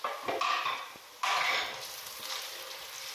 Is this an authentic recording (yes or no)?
yes